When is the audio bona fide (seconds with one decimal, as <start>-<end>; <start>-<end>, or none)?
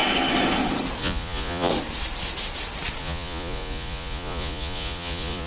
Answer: 0.0-1.0; 1.7-3.0